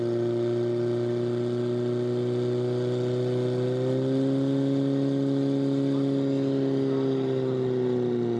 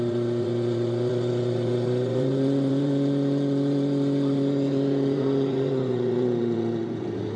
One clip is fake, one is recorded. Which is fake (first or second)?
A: second